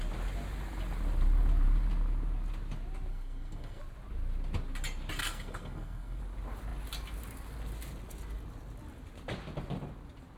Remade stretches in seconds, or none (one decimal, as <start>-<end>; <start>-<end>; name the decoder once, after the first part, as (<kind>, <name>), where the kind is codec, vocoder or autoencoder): 3.1-3.8 (codec, SNAC); 5.2-6.2